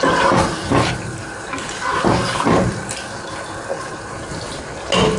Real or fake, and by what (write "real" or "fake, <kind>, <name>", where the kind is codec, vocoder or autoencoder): real